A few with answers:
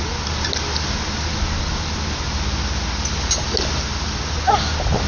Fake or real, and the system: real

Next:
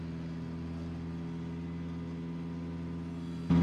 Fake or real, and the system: real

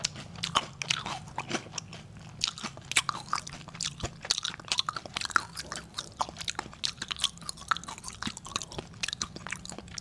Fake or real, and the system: real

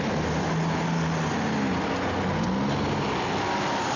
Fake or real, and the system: real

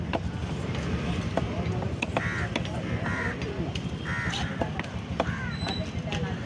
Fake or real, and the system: real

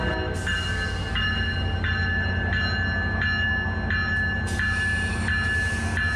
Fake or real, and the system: real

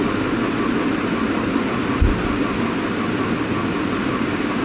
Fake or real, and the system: real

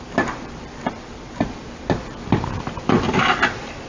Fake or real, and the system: fake, vocoder, BigVGAN v2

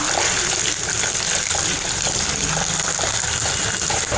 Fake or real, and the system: fake, vocoder, BigVGAN v2